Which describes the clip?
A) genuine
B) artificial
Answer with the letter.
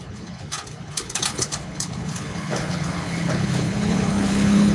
B